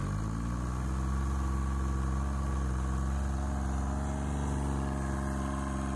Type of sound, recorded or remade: recorded